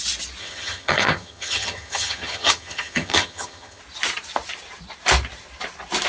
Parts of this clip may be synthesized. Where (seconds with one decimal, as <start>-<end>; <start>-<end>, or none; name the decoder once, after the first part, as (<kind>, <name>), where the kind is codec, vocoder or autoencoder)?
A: 0.4-3.8 (vocoder, HiFi-GAN)